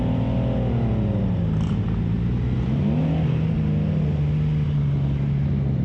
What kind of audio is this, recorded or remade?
recorded